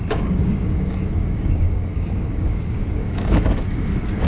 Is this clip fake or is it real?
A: fake